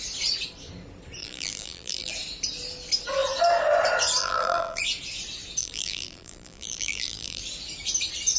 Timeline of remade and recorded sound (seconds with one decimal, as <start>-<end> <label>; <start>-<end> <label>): 0.0-1.2 recorded; 1.2-2.1 remade; 2.1-4.2 recorded; 4.2-4.8 remade; 4.8-5.6 recorded; 5.6-7.4 remade; 7.4-8.4 recorded